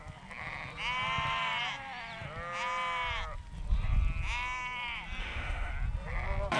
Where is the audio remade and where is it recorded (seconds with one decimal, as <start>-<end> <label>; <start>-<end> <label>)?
0.0-5.2 recorded; 5.2-5.7 remade; 5.7-6.6 recorded